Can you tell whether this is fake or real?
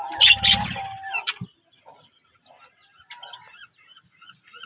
real